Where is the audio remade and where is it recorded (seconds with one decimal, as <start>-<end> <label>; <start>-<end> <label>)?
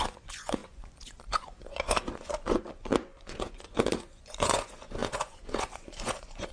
0.0-6.5 remade